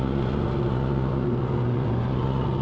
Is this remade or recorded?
remade